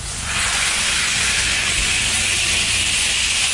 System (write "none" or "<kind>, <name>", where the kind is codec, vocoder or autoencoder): vocoder, Vocos